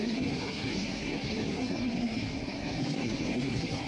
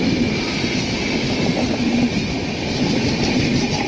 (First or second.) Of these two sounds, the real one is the second